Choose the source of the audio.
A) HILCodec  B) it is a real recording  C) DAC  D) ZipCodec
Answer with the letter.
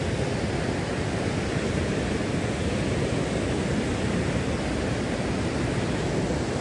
B